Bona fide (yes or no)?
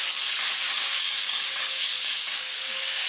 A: no